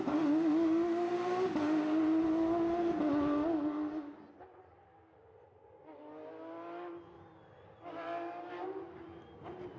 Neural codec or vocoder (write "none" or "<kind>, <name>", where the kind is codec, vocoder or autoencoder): none